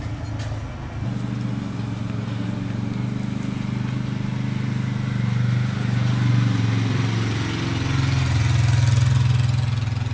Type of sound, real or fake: real